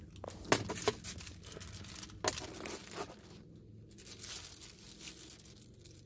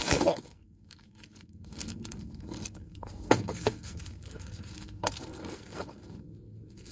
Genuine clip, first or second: first